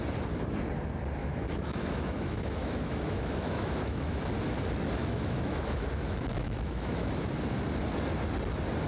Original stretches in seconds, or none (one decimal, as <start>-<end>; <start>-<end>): 0.0-1.2; 4.2-5.0; 7.1-8.9